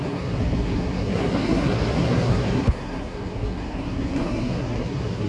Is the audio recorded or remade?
remade